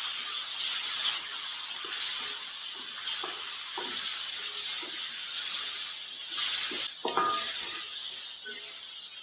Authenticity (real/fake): real